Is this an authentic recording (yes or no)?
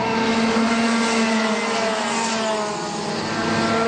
yes